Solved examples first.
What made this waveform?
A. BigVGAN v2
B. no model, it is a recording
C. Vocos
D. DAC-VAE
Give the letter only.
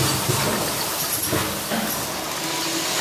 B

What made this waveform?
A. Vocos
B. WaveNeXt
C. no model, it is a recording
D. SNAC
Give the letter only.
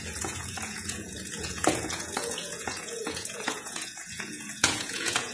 A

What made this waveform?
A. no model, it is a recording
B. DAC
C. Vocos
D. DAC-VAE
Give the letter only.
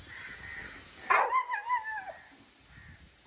A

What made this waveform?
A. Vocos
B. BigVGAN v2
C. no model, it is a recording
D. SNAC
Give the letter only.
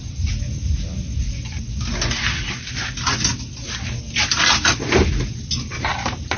C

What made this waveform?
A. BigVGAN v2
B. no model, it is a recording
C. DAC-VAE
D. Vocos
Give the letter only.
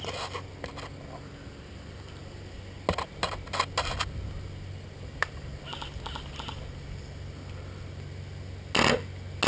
B